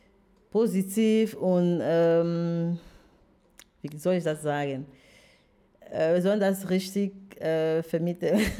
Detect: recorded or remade recorded